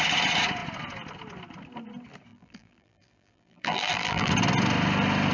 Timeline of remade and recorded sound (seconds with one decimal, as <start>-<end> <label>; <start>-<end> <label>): 0.0-2.3 recorded; 2.3-4.3 remade; 4.3-5.3 recorded